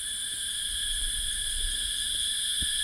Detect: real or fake fake